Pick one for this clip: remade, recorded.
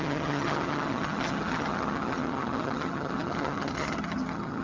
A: remade